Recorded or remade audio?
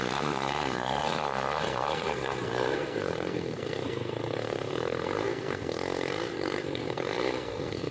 remade